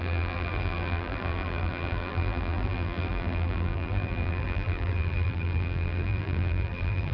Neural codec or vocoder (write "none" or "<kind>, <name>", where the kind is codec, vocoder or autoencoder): vocoder, BigVGAN v2